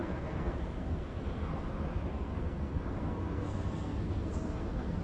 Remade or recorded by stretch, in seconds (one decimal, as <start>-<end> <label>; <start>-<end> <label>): 0.0-1.5 remade; 1.5-2.1 recorded; 2.1-5.0 remade